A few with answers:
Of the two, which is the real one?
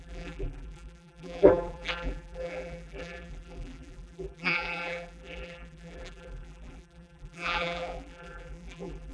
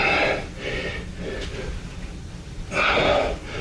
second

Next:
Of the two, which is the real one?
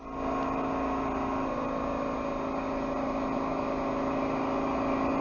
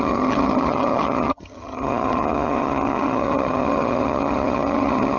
first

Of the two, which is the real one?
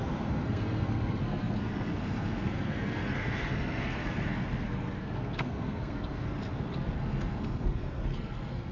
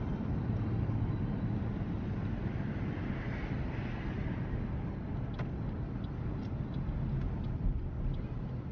second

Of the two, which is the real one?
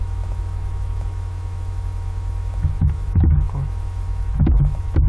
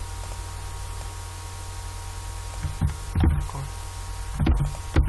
second